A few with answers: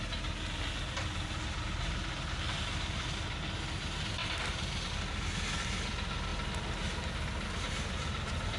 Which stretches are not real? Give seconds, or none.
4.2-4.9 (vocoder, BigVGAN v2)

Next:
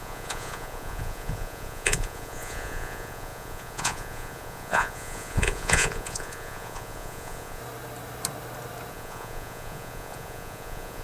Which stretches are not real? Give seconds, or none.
0.0-7.6 (vocoder, Vocos); 8.9-11.0

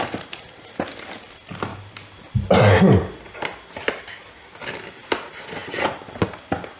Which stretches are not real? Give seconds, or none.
none

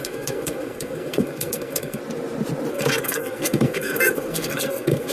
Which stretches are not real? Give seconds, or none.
0.0-2.0 (codec, SNAC); 2.7-5.1

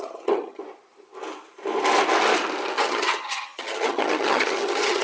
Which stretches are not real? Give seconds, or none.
0.0-0.6 (vocoder, HiFi-GAN); 2.8-5.0